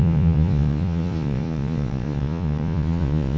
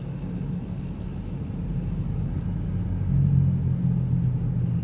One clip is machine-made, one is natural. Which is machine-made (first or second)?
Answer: first